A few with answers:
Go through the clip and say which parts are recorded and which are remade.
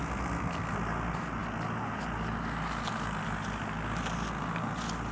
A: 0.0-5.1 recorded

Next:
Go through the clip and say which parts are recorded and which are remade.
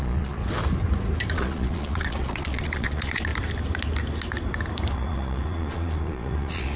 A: 0.0-0.4 remade; 0.4-1.3 recorded; 1.3-3.3 remade; 3.3-4.9 recorded; 4.9-6.8 remade